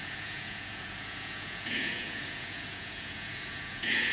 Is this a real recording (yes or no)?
no